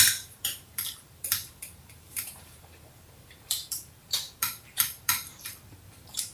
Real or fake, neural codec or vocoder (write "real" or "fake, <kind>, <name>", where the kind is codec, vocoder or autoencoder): fake, vocoder, BigVGAN v2